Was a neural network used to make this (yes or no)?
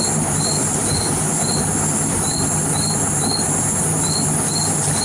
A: no